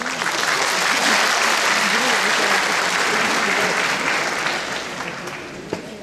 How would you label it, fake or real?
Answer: real